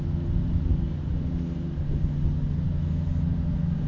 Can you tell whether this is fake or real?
real